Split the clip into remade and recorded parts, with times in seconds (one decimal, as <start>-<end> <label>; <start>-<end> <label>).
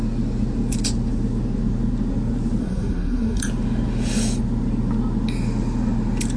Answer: 0.0-2.6 recorded; 2.6-3.4 remade; 3.4-6.4 recorded